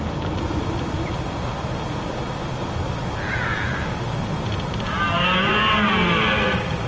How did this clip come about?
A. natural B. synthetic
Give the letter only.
A